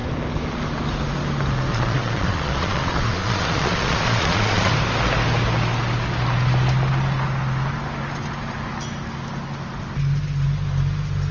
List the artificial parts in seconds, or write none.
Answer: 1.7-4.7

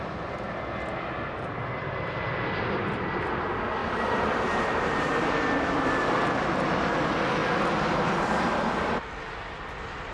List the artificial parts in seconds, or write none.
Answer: 3.8-5.3

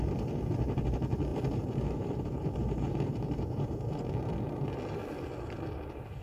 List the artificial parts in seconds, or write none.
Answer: 1.3-4.1

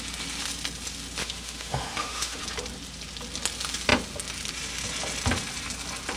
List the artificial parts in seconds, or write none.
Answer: 1.2-2.4

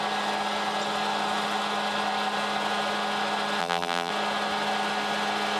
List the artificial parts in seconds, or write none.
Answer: 3.6-4.1